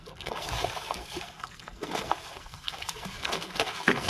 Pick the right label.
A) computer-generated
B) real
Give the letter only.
A